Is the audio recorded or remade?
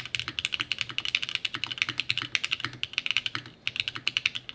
recorded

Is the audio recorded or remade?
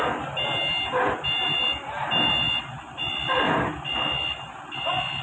recorded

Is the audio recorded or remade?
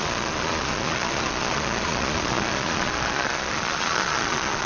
remade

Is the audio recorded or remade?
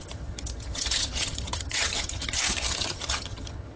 remade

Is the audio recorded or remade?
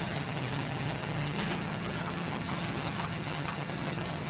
remade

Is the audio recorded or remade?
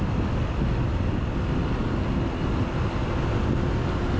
recorded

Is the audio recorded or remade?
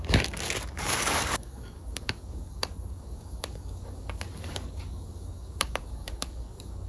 remade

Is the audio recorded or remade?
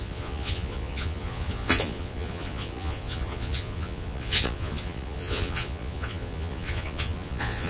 remade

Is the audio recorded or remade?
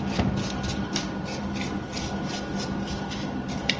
recorded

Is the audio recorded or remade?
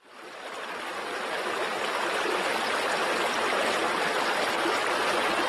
recorded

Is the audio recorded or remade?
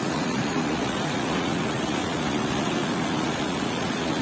remade